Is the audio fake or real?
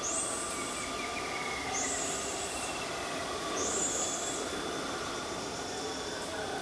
real